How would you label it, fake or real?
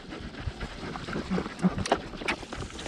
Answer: real